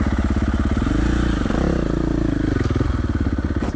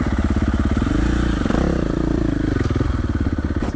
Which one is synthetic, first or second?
second